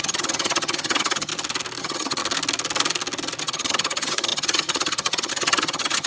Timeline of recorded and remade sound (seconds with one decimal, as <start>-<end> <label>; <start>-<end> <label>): 0.0-1.3 remade; 1.3-1.8 recorded; 1.8-2.2 remade; 2.2-3.4 recorded; 3.4-6.1 remade